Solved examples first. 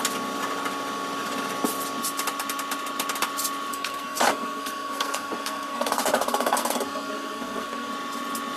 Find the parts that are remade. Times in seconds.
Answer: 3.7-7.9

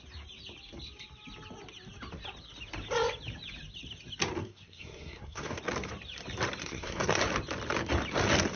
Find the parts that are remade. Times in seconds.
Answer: 4.4-5.6; 6.6-7.2

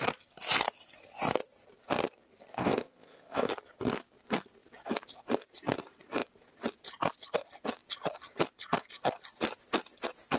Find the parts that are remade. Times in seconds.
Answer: 2.5-3.5

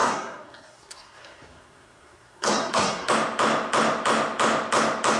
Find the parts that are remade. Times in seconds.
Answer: 0.0-3.1

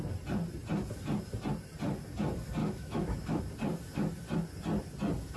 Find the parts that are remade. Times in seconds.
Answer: 2.6-3.4

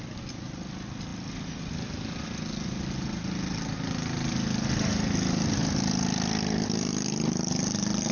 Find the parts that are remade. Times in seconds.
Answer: none

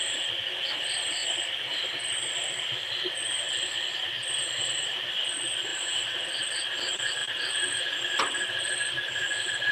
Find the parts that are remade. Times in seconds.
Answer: 5.7-6.4